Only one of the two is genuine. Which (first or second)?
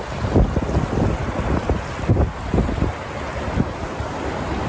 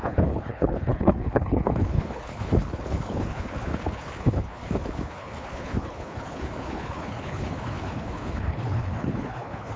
first